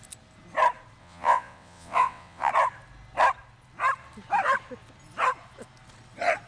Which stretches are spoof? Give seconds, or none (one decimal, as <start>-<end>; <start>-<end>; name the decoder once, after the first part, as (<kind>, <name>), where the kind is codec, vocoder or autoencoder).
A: 1.0-2.5 (vocoder, WaveNeXt)